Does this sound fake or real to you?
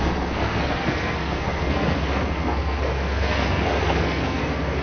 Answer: fake